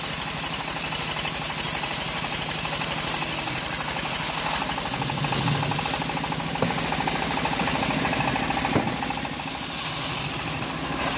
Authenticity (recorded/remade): recorded